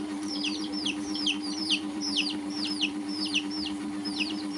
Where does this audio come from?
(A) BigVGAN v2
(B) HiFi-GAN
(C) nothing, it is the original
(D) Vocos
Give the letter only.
A